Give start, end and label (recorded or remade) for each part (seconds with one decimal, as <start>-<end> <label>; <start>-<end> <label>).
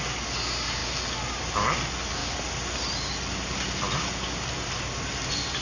0.0-5.6 recorded